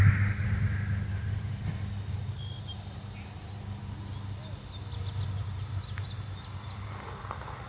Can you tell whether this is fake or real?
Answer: real